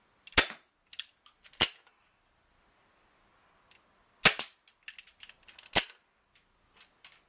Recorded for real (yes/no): yes